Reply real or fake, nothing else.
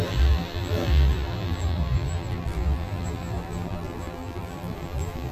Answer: fake